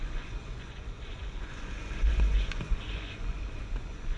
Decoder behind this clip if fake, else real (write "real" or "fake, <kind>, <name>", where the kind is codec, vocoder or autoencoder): fake, vocoder, Vocos